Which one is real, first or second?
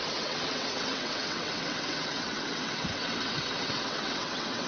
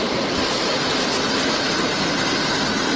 second